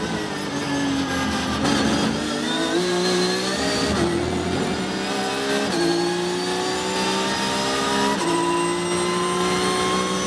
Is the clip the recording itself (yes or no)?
yes